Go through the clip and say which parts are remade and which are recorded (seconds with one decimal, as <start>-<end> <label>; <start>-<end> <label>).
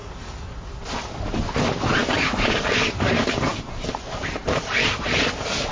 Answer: 0.0-2.0 recorded; 2.0-3.5 remade; 3.5-4.2 recorded; 4.2-5.7 remade